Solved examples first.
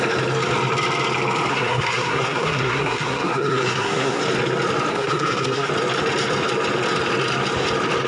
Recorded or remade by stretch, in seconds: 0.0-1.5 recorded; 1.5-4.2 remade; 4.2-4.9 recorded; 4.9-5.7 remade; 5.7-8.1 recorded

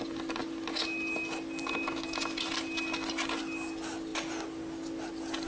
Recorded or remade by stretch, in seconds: 0.0-5.5 recorded

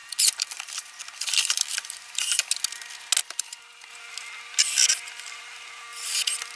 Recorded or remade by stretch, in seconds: 0.0-2.6 remade; 2.6-3.2 recorded; 3.2-3.9 remade; 3.9-6.6 recorded

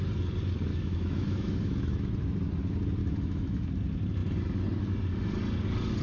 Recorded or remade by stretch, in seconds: 0.0-0.7 recorded; 0.7-2.1 remade; 2.1-3.0 recorded; 3.0-3.7 remade; 3.7-6.0 recorded

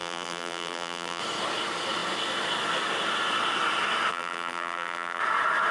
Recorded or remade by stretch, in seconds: 0.0-1.2 remade; 1.2-4.1 recorded; 4.1-5.2 remade; 5.2-5.7 recorded

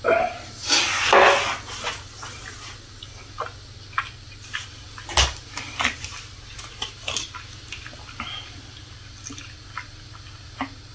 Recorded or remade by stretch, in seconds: 0.0-10.9 recorded

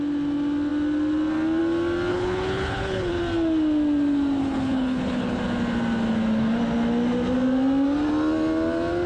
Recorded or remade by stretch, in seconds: 0.0-2.1 recorded; 2.1-3.2 remade; 3.2-4.4 recorded; 4.4-5.4 remade; 5.4-9.1 recorded

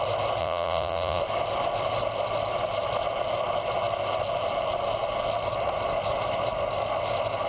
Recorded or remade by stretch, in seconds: 0.0-0.4 recorded; 0.4-1.2 remade; 1.2-7.5 recorded